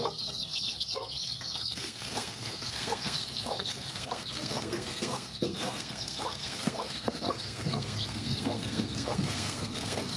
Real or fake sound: fake